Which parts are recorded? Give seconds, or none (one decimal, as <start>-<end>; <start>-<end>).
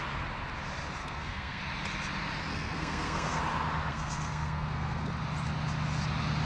0.0-1.0; 1.6-2.5; 3.4-3.9; 5.1-6.5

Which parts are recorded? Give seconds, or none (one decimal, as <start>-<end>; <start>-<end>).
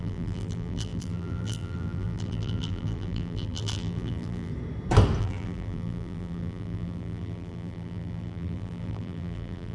4.5-5.2